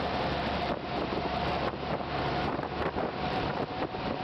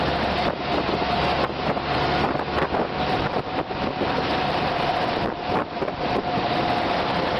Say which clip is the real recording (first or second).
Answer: second